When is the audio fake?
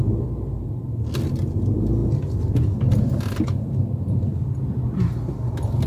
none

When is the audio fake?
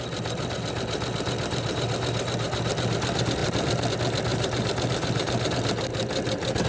4.3-5.5 (vocoder, BigVGAN v2)